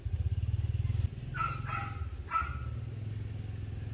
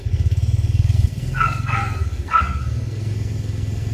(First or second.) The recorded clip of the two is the first